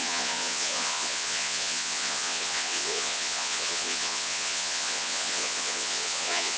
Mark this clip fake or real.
fake